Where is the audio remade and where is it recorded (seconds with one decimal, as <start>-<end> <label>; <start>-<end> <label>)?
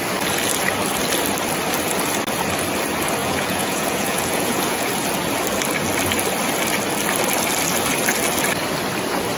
0.0-3.2 recorded; 3.2-4.9 remade; 4.9-9.4 recorded